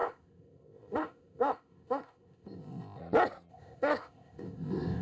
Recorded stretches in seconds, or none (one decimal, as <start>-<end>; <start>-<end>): 3.0-3.5